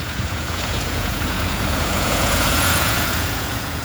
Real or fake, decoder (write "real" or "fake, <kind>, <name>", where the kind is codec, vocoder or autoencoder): fake, vocoder, Vocos